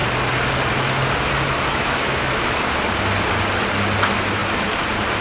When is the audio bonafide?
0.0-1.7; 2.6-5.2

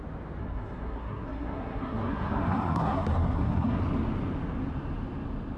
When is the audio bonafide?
0.0-0.4; 3.8-5.6

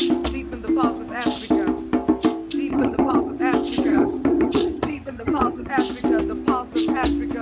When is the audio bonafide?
0.0-2.7; 3.4-3.9; 5.7-7.4

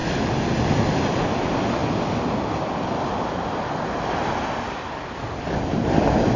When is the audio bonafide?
0.0-6.4

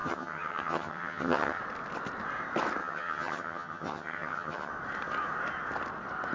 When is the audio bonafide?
1.6-2.8; 4.7-6.3

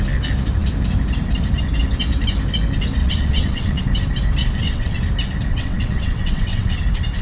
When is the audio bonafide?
0.0-3.0; 3.8-4.4; 5.0-5.5; 6.8-7.2

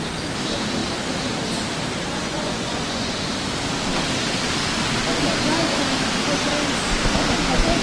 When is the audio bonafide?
0.0-2.2; 3.3-7.8

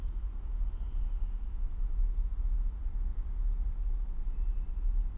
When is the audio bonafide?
0.0-5.2